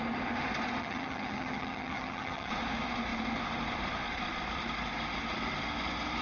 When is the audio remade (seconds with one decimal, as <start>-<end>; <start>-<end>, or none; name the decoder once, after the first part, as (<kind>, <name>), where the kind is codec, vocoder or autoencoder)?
0.8-2.5 (vocoder, HiFi-GAN)